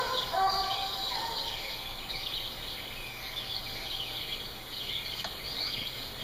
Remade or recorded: remade